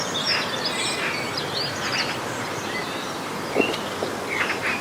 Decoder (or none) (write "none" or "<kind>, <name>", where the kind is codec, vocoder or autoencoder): none